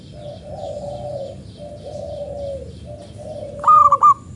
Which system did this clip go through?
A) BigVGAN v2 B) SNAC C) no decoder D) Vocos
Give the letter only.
C